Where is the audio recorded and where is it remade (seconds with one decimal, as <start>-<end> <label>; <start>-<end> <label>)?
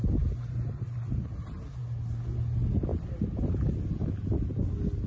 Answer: 0.0-5.1 recorded